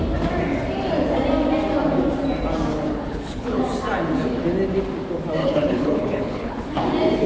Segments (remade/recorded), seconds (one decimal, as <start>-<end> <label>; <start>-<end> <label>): 0.0-2.7 recorded; 2.7-3.6 remade; 3.6-5.4 recorded; 5.4-6.7 remade; 6.7-7.3 recorded